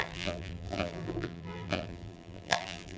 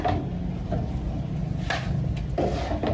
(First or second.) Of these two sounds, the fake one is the first